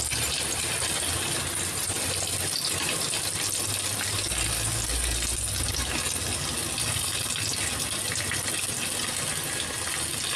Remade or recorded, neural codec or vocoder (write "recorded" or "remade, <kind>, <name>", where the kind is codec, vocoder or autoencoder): recorded